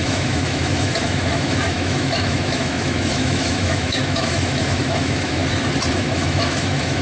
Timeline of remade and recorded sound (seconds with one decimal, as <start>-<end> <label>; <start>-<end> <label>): 0.0-5.4 remade; 5.4-5.9 recorded; 5.9-7.0 remade